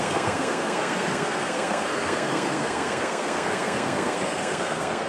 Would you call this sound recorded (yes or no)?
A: no